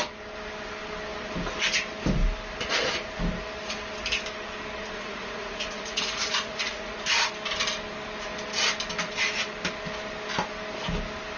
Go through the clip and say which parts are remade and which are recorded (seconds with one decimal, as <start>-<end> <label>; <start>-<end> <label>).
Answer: 0.0-4.8 recorded; 4.8-7.0 remade; 7.0-11.4 recorded